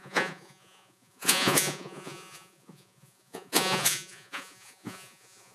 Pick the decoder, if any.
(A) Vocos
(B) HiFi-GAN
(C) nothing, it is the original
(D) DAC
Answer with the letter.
A